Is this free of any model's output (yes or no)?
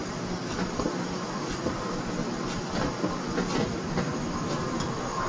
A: yes